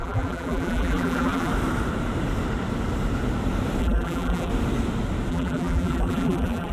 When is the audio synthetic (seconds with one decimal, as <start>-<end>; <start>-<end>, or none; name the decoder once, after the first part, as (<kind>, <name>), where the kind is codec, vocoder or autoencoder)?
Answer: 0.0-1.5 (vocoder, BigVGAN v2); 3.8-4.5; 5.3-6.7